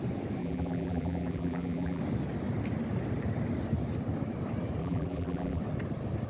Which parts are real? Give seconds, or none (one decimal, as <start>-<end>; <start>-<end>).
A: 0.0-0.4; 2.0-4.8; 5.6-6.3